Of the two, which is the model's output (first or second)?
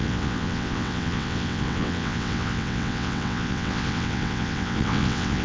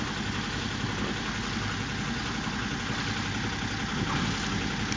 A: first